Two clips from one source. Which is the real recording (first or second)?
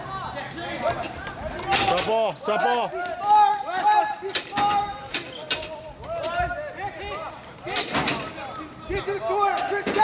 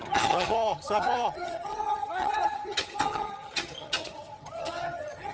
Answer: first